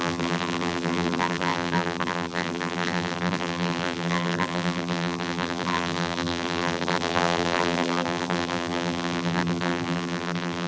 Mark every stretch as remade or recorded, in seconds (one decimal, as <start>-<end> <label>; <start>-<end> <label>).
0.0-10.7 remade